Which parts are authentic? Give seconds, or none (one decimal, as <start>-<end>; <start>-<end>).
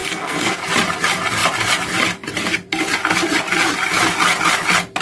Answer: 0.6-5.0